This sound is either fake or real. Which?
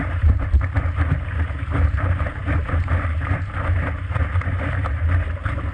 fake